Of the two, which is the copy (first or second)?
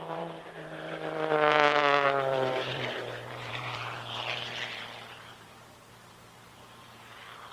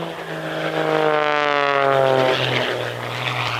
first